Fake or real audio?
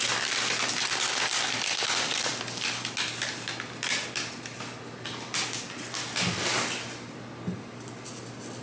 real